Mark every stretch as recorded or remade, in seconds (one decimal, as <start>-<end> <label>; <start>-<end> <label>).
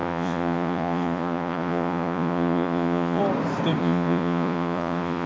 0.0-3.2 remade; 3.2-3.8 recorded; 3.8-5.3 remade